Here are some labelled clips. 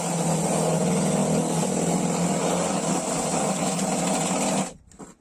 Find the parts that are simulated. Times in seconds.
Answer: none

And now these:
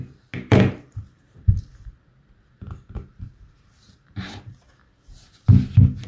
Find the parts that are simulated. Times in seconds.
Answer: 0.5-4.2 (vocoder, BigVGAN v2)

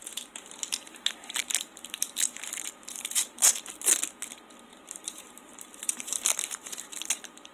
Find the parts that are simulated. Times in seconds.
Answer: 0.0-3.5 (vocoder, BigVGAN v2); 4.7-7.5

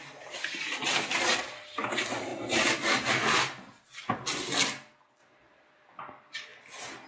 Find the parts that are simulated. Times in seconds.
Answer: 5.2-6.0 (vocoder, BigVGAN v2)

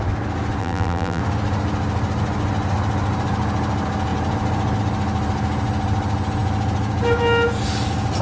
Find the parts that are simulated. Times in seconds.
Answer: 0.6-1.2 (vocoder, BigVGAN v2)